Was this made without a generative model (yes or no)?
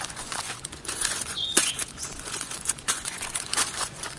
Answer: no